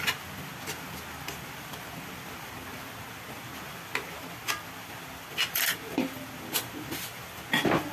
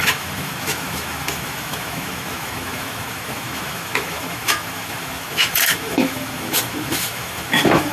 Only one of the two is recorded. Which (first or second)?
first